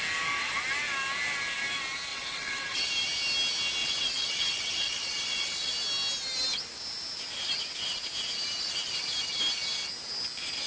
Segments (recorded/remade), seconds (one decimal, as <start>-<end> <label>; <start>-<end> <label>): 0.0-2.1 recorded; 2.1-2.9 remade; 2.9-3.8 recorded; 3.8-5.7 remade; 5.7-10.7 recorded